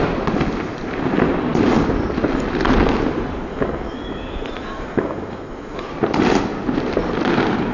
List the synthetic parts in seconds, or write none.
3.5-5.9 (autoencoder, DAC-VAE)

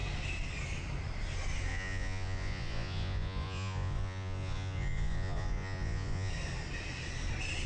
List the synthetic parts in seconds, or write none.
1.7-6.3 (vocoder, Vocos)

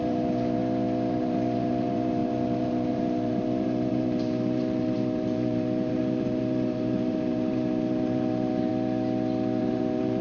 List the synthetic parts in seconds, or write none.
0.0-0.6 (vocoder, BigVGAN v2); 1.1-8.7; 9.6-10.2

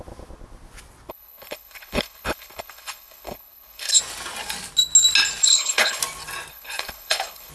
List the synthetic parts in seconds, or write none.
1.1-4.0 (codec, HILCodec); 5.4-6.0; 6.5-7.5

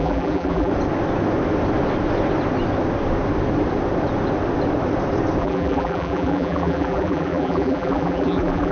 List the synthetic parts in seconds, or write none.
0.0-0.7 (vocoder, BigVGAN v2); 5.4-8.7